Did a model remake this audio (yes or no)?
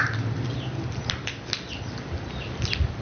no